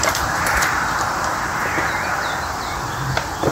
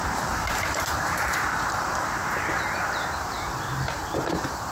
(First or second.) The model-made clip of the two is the second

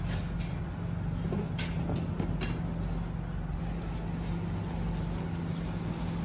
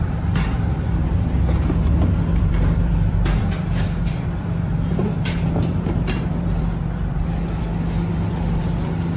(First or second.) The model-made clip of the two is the second